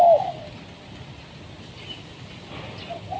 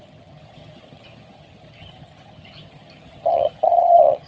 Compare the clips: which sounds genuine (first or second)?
first